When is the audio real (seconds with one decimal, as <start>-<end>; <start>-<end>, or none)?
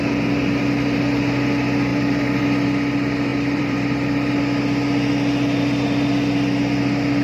0.0-1.9; 2.4-3.3; 4.3-7.2